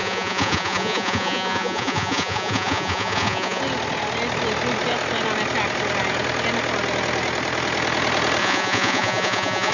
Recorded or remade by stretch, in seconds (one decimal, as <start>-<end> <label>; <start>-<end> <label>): 0.0-3.6 remade; 3.6-8.4 recorded; 8.4-9.7 remade